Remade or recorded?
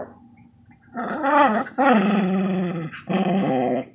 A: recorded